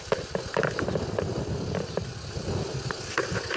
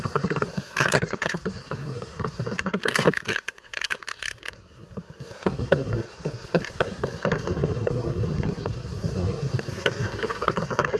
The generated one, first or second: second